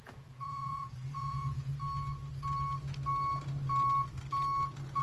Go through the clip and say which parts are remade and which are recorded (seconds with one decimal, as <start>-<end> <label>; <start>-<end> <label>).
0.0-1.7 remade; 1.7-5.0 recorded